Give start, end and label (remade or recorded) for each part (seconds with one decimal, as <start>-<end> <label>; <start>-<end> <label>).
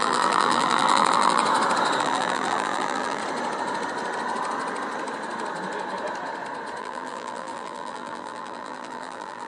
0.0-1.4 remade; 1.4-2.0 recorded; 2.0-3.2 remade; 3.2-6.8 recorded; 6.8-9.5 remade